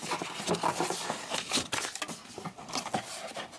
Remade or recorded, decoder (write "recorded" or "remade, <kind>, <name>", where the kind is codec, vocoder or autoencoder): recorded